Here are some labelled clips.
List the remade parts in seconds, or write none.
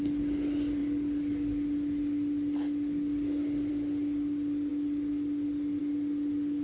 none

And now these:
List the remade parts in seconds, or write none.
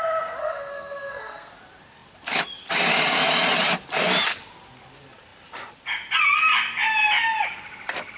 0.4-1.5 (codec, SNAC)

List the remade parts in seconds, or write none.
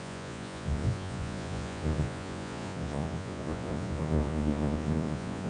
0.0-5.5 (vocoder, Vocos)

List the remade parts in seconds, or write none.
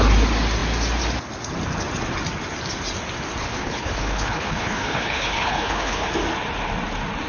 3.4-6.1 (codec, HILCodec)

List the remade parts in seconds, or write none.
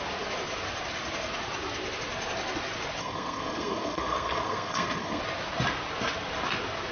3.0-5.2 (codec, SNAC)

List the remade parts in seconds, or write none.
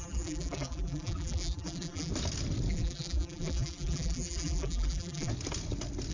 0.0-2.1 (vocoder, BigVGAN v2); 2.7-5.3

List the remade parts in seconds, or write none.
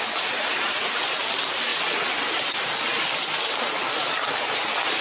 none